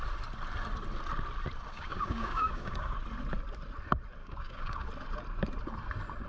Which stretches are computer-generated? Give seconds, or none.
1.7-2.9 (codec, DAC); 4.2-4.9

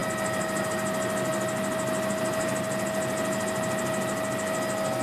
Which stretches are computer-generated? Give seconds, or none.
none

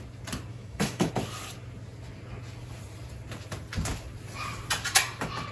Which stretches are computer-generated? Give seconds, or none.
0.5-1.1 (autoencoder, DAC-VAE)

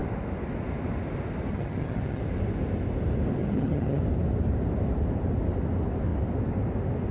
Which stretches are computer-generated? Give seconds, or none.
1.5-2.2 (vocoder, HiFi-GAN); 3.4-4.0